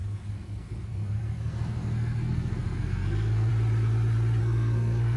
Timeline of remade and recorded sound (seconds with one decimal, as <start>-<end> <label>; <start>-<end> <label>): 0.0-3.5 remade; 3.5-4.4 recorded; 4.4-5.2 remade